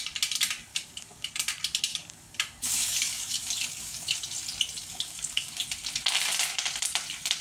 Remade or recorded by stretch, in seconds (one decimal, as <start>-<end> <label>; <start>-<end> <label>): 0.0-0.7 recorded; 0.7-1.3 remade; 1.3-1.9 recorded; 1.9-4.2 remade; 4.2-4.8 recorded; 4.8-5.6 remade; 5.6-7.4 recorded